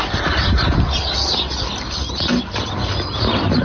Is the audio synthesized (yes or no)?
no